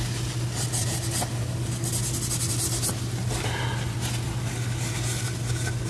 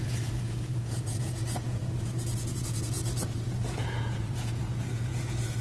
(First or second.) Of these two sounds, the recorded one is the first